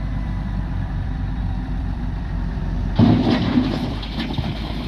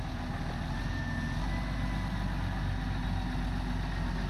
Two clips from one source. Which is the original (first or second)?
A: second